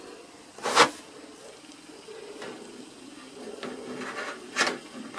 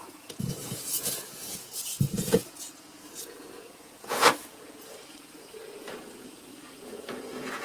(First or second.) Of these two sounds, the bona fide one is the first